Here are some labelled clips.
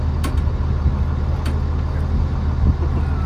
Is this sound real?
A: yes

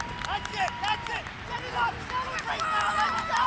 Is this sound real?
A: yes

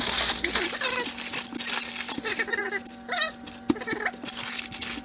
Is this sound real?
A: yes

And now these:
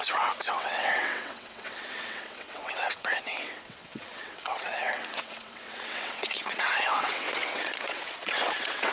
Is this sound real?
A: no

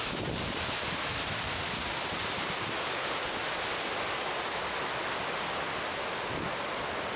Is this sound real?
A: yes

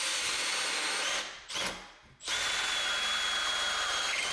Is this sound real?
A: yes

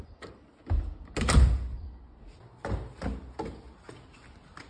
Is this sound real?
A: yes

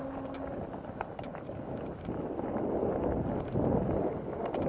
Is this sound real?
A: no